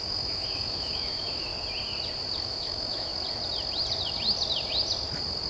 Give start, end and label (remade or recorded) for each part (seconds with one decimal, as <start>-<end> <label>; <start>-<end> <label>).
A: 0.0-1.5 remade; 1.5-2.4 recorded; 2.4-3.1 remade; 3.1-5.5 recorded